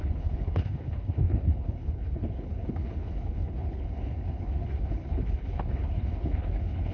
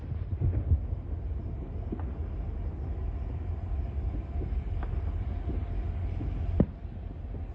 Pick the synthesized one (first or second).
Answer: first